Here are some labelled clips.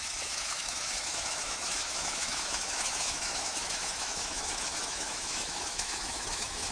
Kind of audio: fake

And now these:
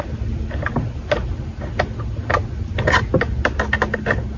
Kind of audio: real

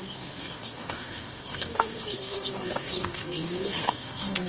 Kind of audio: fake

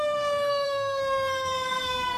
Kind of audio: fake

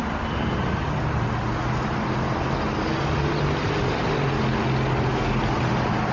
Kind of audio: real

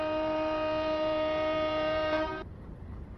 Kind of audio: fake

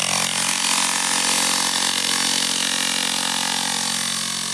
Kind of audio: real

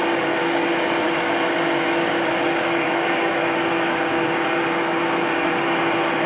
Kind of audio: fake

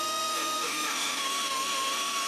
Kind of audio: fake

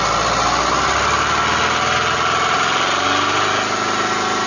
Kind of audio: real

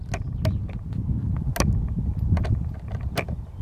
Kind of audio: real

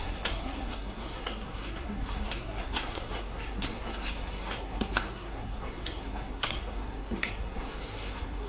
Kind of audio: fake